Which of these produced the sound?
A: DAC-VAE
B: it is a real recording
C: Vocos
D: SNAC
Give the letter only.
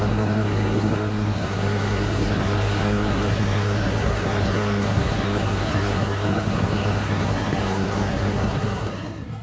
D